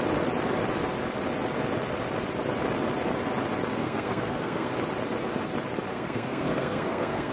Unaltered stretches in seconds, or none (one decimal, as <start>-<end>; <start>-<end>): 0.0-3.8; 4.7-5.9